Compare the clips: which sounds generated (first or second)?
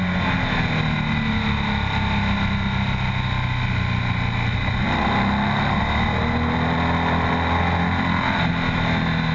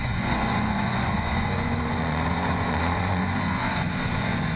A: second